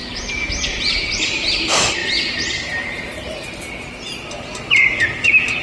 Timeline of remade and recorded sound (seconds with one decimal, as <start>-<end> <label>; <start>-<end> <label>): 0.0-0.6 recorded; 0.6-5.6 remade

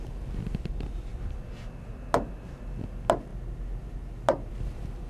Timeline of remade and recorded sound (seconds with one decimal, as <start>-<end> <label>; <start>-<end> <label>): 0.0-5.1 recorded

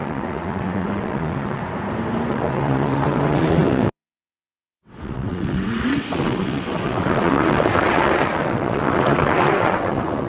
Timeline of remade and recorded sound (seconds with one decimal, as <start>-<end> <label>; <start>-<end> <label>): 0.0-1.6 remade; 1.6-2.3 recorded; 2.3-10.3 remade

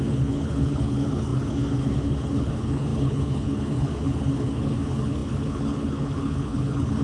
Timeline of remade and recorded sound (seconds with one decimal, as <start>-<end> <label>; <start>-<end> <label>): 0.0-7.0 remade

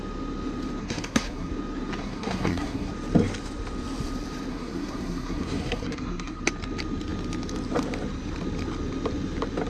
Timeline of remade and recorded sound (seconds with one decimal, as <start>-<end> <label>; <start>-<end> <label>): 0.0-0.8 recorded; 0.8-1.5 remade; 1.5-2.0 recorded; 2.0-2.9 remade; 2.9-4.5 recorded; 4.5-6.4 remade; 6.4-9.7 recorded

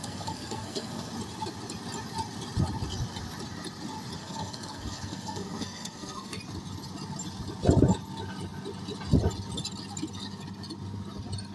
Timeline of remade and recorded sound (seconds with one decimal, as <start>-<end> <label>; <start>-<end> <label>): 0.0-1.1 remade; 1.1-4.2 recorded; 4.2-6.4 remade; 6.4-11.5 recorded